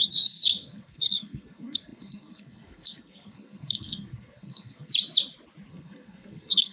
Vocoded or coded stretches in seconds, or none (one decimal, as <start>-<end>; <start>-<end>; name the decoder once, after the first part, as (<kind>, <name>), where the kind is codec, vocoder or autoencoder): 0.0-4.9 (codec, SNAC); 5.7-6.7